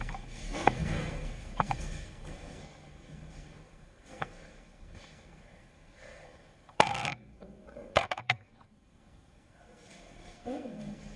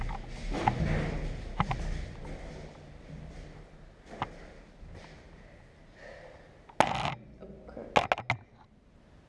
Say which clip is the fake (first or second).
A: first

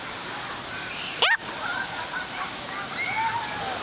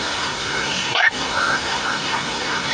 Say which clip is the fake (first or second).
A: second